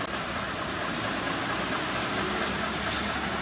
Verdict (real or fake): real